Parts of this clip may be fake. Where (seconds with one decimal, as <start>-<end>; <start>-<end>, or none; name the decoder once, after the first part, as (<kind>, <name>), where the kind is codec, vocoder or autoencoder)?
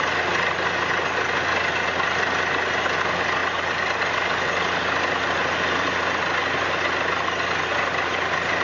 3.4-5.4 (vocoder, BigVGAN v2)